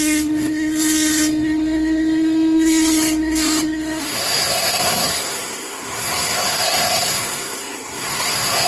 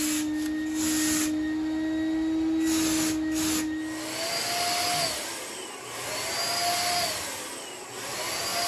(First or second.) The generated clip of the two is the first